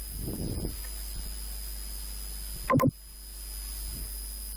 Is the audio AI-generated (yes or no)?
no